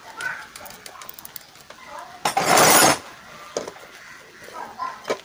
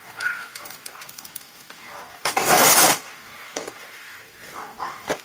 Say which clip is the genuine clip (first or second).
first